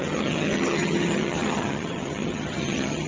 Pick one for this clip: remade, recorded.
remade